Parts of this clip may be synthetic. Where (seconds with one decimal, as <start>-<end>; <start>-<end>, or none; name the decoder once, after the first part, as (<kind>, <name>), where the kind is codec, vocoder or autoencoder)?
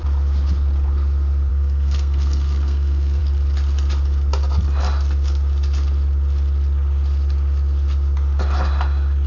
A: 1.5-3.2 (codec, SNAC)